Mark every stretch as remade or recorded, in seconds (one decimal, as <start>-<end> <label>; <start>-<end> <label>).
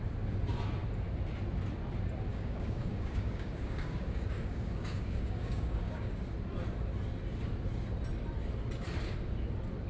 0.0-2.3 recorded; 2.3-6.2 remade; 6.2-9.9 recorded